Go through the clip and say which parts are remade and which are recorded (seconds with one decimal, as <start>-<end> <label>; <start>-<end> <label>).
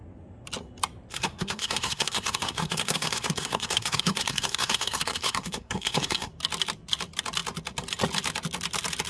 0.0-1.1 recorded; 1.1-6.3 remade; 6.3-9.1 recorded